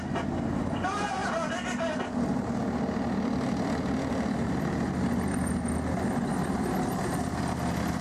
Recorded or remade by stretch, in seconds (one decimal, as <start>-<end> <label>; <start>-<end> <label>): 0.0-8.0 recorded